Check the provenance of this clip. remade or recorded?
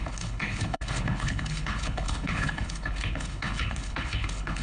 remade